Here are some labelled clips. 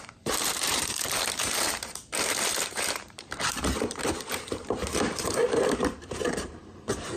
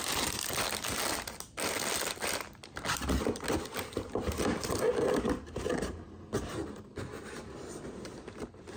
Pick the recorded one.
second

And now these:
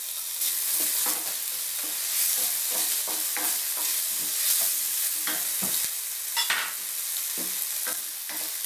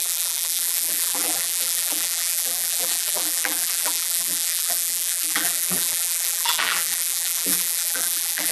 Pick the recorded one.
first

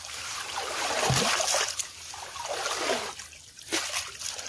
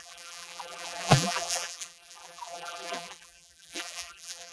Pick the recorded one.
first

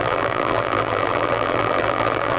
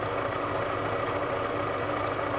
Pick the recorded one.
second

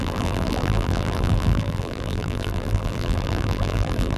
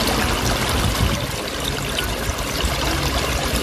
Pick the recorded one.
second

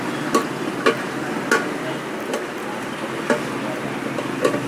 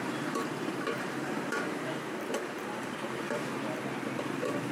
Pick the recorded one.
first